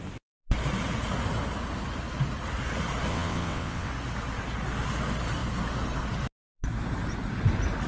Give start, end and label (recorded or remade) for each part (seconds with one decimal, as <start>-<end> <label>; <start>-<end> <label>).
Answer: 0.0-3.1 recorded; 3.1-3.9 remade; 3.9-7.9 recorded